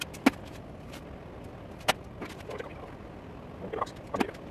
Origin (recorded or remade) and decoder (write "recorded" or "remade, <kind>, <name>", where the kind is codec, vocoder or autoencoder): recorded